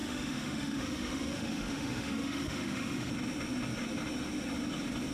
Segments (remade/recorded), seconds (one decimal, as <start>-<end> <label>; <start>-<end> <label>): 0.0-3.1 remade; 3.1-5.1 recorded